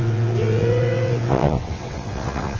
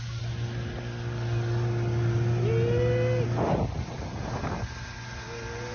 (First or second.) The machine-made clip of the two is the first